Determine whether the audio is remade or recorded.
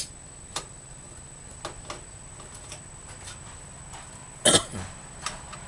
recorded